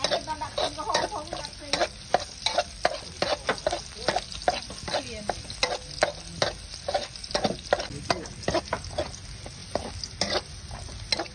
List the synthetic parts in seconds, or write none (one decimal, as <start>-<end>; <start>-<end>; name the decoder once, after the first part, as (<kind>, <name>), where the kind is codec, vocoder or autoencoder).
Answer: none